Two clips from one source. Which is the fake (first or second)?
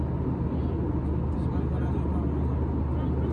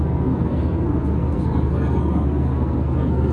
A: second